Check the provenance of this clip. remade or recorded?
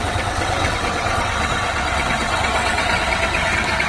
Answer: remade